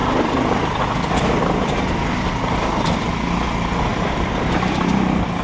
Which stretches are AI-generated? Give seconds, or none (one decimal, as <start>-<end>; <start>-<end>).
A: 0.0-3.1; 3.9-4.9